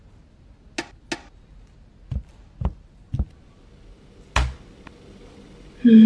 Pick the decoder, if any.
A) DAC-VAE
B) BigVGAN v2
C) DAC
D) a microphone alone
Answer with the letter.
D